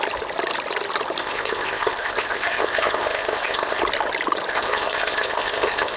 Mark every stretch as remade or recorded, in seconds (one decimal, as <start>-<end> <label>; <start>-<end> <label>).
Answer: 0.0-1.2 recorded; 1.2-3.8 remade; 3.8-4.5 recorded; 4.5-6.0 remade